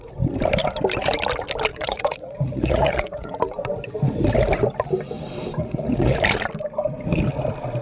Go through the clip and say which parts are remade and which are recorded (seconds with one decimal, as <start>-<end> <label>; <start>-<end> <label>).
0.0-1.7 recorded; 1.7-3.3 remade; 3.3-5.6 recorded; 5.6-6.1 remade; 6.1-7.8 recorded